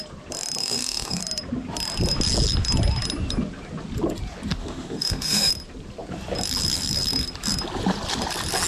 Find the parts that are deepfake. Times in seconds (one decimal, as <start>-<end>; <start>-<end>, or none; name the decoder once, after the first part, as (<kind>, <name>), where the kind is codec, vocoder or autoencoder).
0.6-1.2 (autoencoder, DAC-VAE); 4.6-5.5